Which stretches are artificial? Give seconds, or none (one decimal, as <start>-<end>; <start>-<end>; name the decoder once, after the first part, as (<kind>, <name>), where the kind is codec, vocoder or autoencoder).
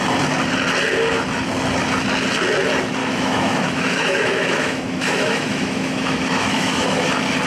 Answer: 3.0-7.1 (autoencoder, DAC-VAE)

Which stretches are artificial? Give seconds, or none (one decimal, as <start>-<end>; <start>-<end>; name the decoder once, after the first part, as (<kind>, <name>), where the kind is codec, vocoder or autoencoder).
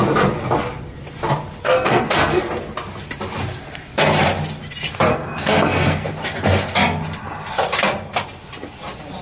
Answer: 1.6-2.4 (codec, SNAC); 5.1-6.1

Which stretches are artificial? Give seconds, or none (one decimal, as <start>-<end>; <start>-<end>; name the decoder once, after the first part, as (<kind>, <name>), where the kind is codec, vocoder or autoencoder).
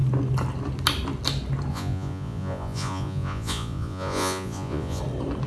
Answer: 1.7-5.0 (vocoder, Vocos)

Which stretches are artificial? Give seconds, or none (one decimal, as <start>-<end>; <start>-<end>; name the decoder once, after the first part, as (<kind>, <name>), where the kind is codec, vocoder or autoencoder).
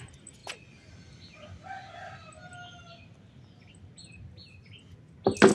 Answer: none